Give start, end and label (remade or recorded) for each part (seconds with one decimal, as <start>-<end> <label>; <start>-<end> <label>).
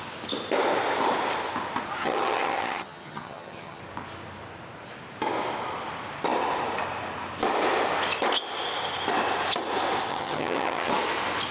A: 0.0-2.0 recorded; 2.0-3.8 remade; 3.8-10.1 recorded; 10.1-10.9 remade; 10.9-11.5 recorded